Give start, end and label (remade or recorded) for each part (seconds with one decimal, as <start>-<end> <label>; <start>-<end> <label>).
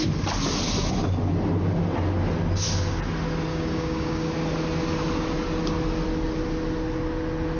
0.0-3.5 recorded; 3.5-4.3 remade; 4.3-7.6 recorded